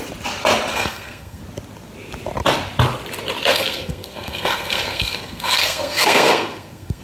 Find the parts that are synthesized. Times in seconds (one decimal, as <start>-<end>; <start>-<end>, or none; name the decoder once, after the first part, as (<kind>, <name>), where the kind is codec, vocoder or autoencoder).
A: 0.7-1.4 (codec, SNAC); 3.5-7.0